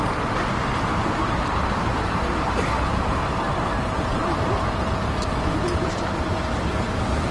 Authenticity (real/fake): fake